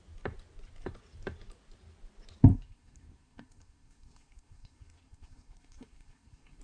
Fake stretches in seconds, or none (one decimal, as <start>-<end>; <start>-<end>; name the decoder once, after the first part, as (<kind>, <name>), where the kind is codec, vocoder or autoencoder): 2.5-6.6 (codec, SNAC)